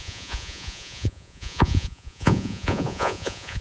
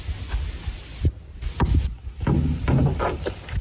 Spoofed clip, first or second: first